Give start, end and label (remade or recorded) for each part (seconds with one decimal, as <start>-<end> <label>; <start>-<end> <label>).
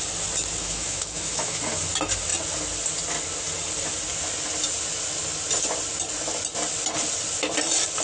0.0-0.6 recorded; 0.6-1.6 remade; 1.6-8.0 recorded